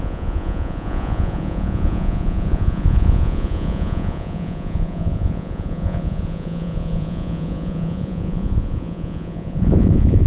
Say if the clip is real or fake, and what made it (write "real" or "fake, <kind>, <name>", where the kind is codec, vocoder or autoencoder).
fake, vocoder, Vocos